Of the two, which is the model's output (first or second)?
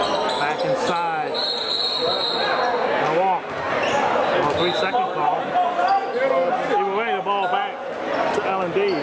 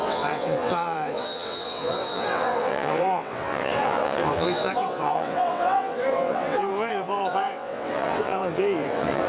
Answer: second